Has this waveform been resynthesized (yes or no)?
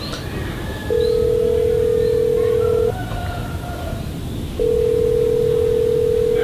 no